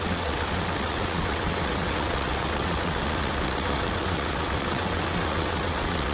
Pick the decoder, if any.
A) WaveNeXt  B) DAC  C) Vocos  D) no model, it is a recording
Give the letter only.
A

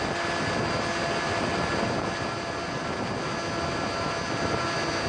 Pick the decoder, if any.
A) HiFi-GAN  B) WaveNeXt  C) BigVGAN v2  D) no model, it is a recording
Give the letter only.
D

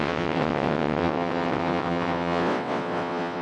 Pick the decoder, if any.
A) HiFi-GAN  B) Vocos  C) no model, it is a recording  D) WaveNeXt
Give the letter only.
D